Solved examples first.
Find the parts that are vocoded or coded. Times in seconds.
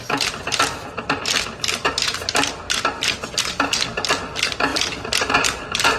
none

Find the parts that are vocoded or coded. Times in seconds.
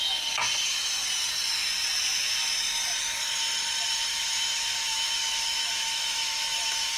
4.1-7.0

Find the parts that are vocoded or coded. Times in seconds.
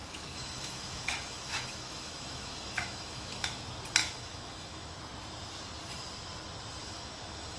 0.0-3.6; 4.0-5.0; 6.8-7.6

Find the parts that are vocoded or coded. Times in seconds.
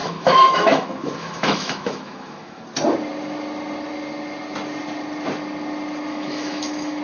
0.0-2.6; 6.1-7.0